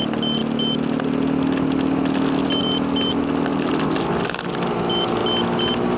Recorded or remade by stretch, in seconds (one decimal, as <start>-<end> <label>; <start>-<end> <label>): 0.0-6.0 recorded